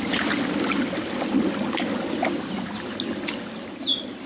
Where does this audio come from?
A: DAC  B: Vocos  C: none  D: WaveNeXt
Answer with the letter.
C